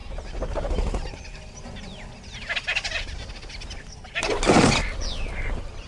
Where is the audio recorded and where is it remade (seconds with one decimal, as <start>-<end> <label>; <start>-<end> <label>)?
0.0-5.9 recorded